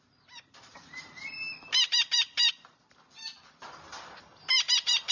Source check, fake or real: fake